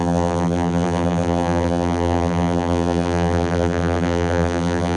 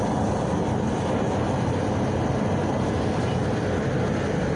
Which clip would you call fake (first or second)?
first